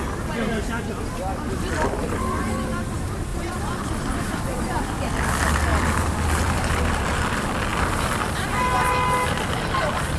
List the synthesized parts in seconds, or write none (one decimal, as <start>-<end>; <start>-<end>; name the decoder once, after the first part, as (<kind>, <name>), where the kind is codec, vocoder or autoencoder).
2.0-2.7 (vocoder, BigVGAN v2); 3.3-4.8; 5.7-7.0